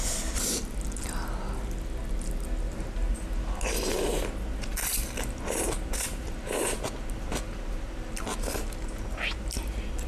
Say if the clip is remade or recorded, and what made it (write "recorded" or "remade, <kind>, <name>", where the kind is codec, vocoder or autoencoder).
recorded